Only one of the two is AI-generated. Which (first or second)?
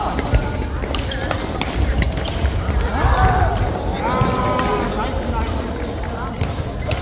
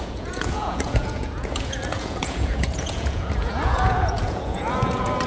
second